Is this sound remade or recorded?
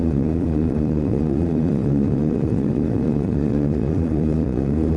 remade